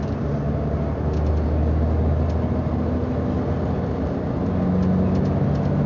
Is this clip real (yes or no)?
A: yes